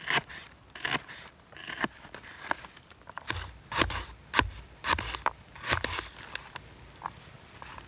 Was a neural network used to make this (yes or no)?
no